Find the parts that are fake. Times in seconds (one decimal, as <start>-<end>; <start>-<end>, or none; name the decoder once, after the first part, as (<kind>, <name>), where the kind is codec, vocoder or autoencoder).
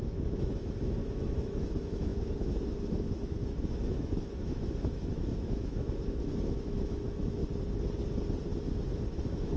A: 0.0-7.4 (autoencoder, DAC-VAE); 9.1-9.6